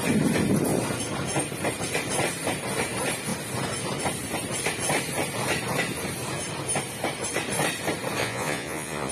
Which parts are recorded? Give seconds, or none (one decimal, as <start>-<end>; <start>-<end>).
0.0-8.2